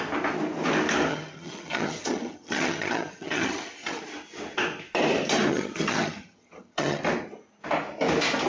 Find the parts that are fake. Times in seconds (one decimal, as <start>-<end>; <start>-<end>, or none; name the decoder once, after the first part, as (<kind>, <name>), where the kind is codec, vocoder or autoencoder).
1.1-4.0 (vocoder, HiFi-GAN); 5.5-7.0